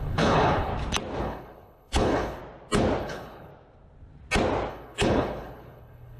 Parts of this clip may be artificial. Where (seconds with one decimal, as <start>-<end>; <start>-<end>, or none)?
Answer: 0.0-0.7; 1.2-2.4; 3.0-3.5; 4.7-6.2